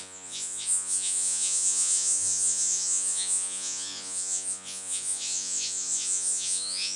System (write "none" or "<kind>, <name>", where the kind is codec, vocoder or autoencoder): vocoder, Vocos